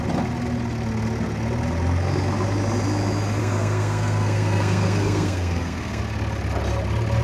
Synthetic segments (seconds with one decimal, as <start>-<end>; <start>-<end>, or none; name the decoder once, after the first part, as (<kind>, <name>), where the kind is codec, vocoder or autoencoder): 3.4-6.0 (codec, SNAC)